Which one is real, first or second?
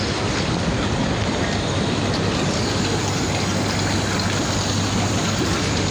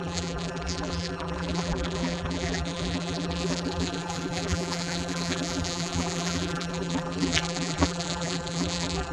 first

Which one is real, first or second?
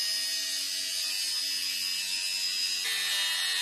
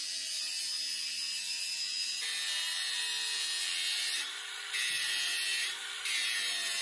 first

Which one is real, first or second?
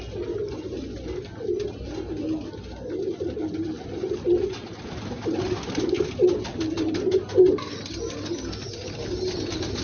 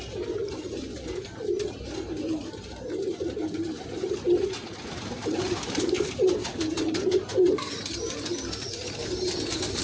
first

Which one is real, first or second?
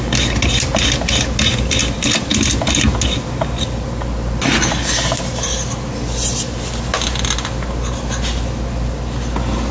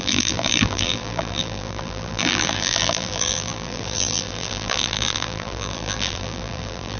first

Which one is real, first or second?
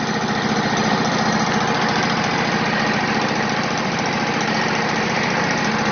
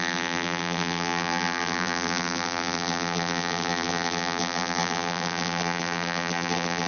first